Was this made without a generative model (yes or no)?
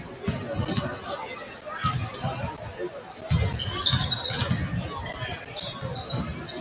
yes